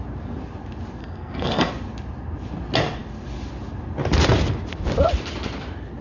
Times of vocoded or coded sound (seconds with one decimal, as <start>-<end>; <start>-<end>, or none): 1.0-1.7